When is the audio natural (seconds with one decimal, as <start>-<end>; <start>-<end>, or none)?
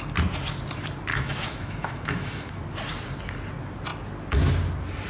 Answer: 0.0-1.1; 2.6-5.1